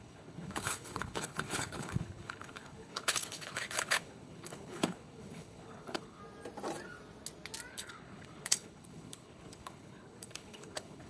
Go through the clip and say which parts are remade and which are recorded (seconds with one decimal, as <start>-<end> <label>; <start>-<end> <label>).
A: 0.0-6.2 remade; 6.2-7.7 recorded; 7.7-11.1 remade